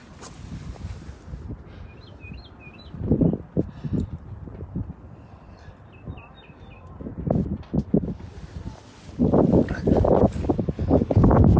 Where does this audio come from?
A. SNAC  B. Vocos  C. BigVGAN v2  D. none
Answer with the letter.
D